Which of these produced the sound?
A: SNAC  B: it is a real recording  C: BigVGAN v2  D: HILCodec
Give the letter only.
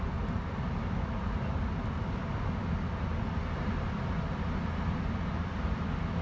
B